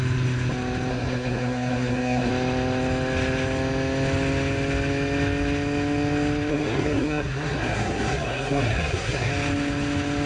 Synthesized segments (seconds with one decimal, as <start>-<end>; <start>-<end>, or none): 0.9-2.3; 6.5-9.3